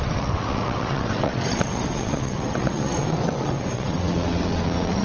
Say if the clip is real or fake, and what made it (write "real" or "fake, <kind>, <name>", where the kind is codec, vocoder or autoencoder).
fake, vocoder, WaveNeXt